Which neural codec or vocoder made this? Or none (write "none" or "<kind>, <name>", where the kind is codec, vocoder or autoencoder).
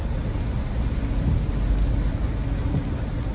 none